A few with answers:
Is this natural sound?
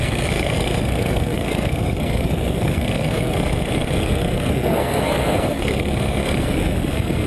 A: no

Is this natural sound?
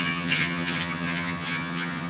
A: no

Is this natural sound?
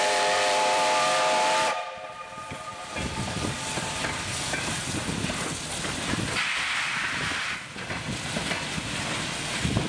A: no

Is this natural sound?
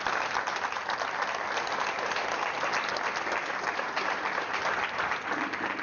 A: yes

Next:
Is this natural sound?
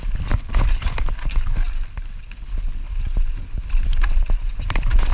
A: yes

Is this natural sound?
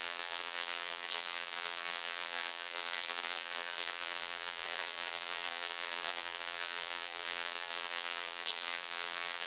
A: no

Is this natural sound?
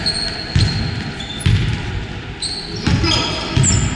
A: yes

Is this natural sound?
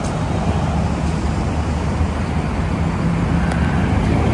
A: yes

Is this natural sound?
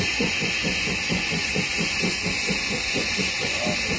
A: no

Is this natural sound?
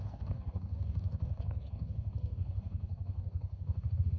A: no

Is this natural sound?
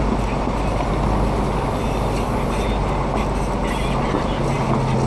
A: yes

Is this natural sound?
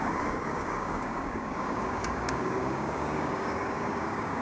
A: no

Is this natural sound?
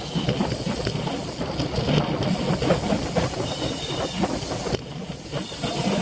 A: yes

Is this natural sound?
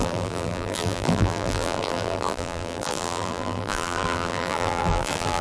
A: no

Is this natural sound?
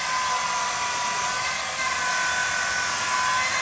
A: yes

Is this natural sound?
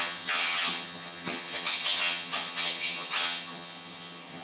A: no